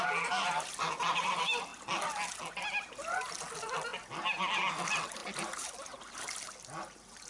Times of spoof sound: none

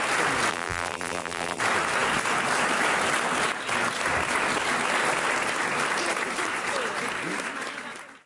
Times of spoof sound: 0.5-1.6 (vocoder, BigVGAN v2)

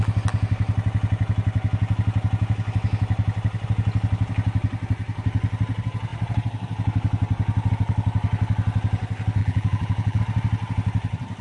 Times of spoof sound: 9.4-10.2 (vocoder, BigVGAN v2)

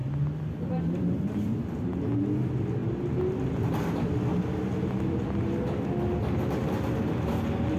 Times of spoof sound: none

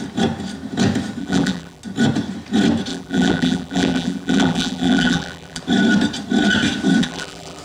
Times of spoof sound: 1.2-1.8 (vocoder, BigVGAN v2); 2.9-5.6; 7.0-7.6

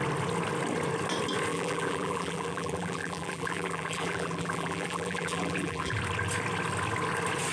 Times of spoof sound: 1.5-6.0 (vocoder, BigVGAN v2)

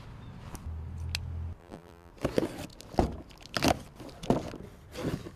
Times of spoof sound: 1.6-2.1 (vocoder, BigVGAN v2)

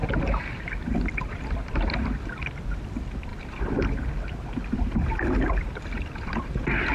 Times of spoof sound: 0.9-6.9 (vocoder, BigVGAN v2)